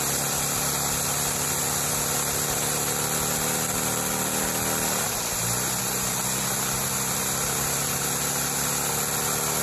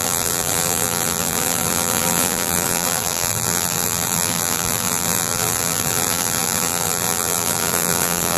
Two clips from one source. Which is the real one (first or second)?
first